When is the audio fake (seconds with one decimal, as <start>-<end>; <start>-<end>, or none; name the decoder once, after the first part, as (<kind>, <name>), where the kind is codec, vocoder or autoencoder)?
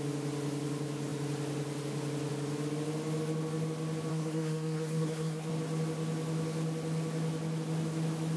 4.1-5.5 (codec, SNAC)